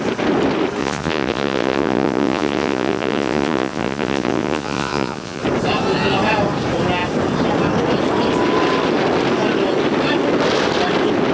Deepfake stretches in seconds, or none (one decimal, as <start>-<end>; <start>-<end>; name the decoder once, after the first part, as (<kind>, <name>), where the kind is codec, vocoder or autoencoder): 0.8-5.4 (vocoder, Vocos)